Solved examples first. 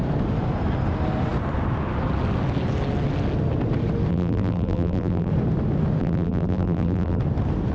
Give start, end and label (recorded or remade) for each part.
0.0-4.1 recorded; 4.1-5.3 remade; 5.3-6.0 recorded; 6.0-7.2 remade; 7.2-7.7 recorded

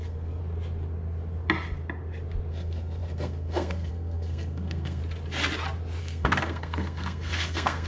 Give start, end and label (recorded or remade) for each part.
0.0-0.4 remade; 0.4-2.5 recorded; 2.5-5.0 remade; 5.0-6.0 recorded; 6.0-7.9 remade

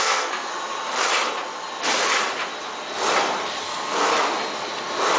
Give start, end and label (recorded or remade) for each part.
0.0-0.5 remade; 0.5-3.6 recorded; 3.6-4.1 remade; 4.1-5.2 recorded

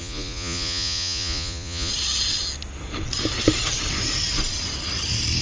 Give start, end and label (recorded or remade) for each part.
0.0-1.9 remade; 1.9-5.4 recorded